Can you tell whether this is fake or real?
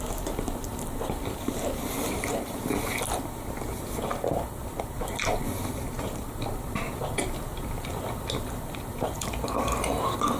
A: real